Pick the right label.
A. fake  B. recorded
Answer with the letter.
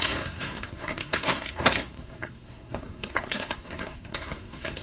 A